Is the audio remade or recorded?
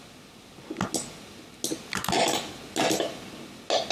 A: recorded